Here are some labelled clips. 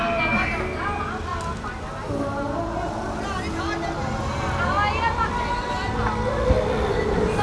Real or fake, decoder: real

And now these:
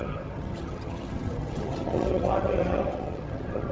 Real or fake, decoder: fake, vocoder, HiFi-GAN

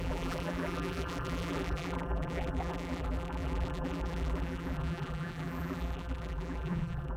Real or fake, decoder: fake, vocoder, BigVGAN v2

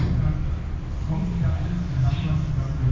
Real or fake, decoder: real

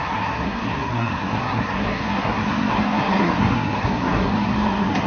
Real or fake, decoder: fake, codec, SNAC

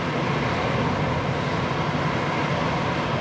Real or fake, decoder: real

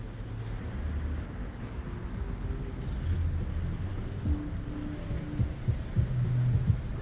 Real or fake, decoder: real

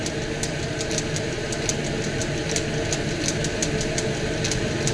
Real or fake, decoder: real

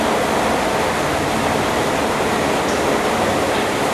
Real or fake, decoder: real